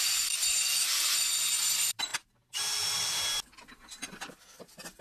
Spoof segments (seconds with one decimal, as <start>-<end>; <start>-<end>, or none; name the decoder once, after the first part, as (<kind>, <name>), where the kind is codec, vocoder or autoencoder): none